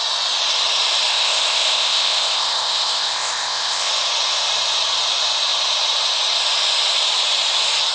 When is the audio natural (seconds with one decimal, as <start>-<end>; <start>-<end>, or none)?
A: 0.0-1.1; 3.9-7.9

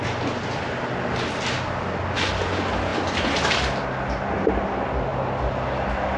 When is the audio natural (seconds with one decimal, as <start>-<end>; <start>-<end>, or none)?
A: 0.0-6.2